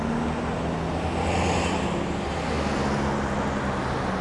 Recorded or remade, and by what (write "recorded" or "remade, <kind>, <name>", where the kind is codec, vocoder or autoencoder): recorded